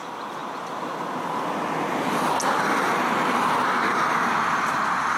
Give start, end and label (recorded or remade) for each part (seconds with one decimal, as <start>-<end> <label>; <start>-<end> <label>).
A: 0.0-3.9 recorded; 3.9-5.2 remade